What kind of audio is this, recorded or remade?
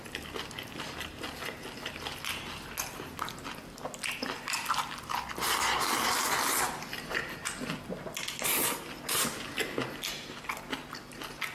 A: recorded